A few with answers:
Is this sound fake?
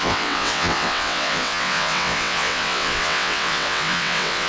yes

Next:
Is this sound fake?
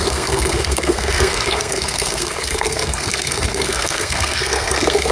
yes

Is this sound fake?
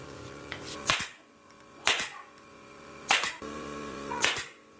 yes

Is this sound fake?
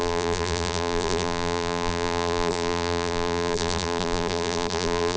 yes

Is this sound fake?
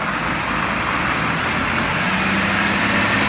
no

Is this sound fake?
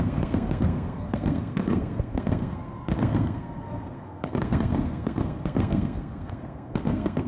yes